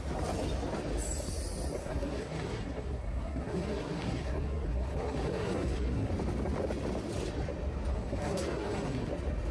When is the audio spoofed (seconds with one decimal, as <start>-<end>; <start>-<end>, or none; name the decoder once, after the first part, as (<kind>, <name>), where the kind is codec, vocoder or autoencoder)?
1.8-6.1 (codec, SNAC); 7.9-9.1